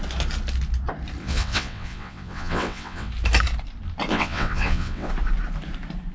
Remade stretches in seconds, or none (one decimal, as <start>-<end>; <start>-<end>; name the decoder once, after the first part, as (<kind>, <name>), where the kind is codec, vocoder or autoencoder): 1.2-3.1 (vocoder, WaveNeXt); 4.1-5.1